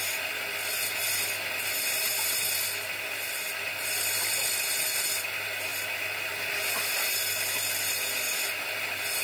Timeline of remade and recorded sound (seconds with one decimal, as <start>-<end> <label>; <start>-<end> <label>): 0.0-9.2 recorded